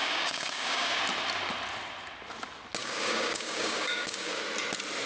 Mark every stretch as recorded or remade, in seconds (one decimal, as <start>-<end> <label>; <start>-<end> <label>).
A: 0.0-1.0 remade; 1.0-2.8 recorded; 2.8-4.4 remade; 4.4-5.1 recorded